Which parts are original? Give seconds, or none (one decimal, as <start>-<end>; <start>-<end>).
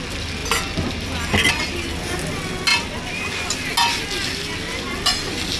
0.0-5.6